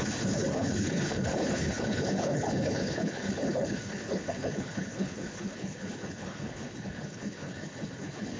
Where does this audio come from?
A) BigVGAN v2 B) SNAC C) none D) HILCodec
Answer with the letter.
D